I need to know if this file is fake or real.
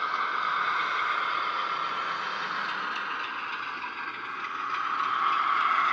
real